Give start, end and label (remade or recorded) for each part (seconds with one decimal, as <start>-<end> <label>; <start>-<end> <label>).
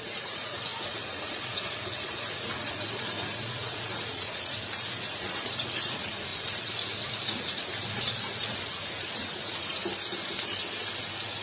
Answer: 0.0-9.8 remade; 9.8-11.0 recorded; 11.0-11.4 remade